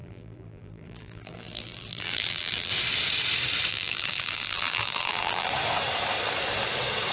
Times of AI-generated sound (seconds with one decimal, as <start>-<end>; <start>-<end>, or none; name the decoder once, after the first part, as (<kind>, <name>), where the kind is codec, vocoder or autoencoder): 0.0-2.7 (vocoder, BigVGAN v2); 3.7-5.5